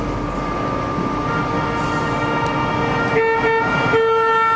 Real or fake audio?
real